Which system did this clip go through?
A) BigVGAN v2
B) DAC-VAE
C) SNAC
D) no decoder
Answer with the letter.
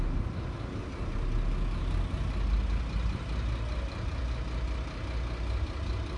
D